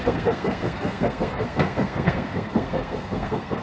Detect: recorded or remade remade